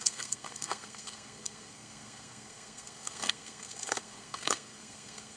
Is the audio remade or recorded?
remade